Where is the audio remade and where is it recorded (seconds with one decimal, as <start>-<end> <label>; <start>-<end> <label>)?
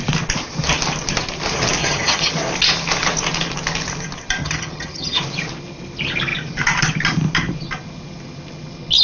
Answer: 0.0-1.8 recorded; 1.8-2.3 remade; 2.3-4.4 recorded; 4.4-5.2 remade; 5.2-9.0 recorded